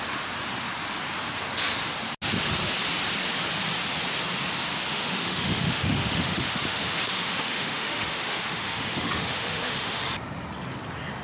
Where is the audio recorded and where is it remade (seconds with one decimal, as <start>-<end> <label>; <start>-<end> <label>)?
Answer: 0.0-4.9 recorded; 4.9-10.0 remade; 10.0-11.2 recorded